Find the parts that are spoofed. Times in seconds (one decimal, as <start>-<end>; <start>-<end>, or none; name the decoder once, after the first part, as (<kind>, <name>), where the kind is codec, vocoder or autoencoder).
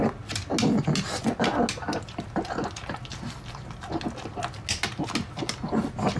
3.1-3.9 (vocoder, BigVGAN v2)